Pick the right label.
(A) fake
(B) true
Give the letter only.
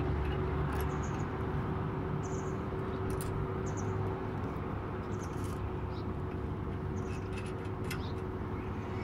B